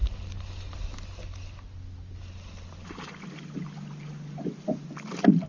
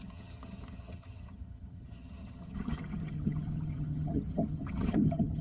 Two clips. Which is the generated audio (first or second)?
second